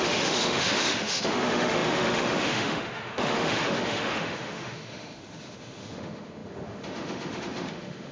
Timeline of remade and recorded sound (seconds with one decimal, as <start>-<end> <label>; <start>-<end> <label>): 0.0-8.1 remade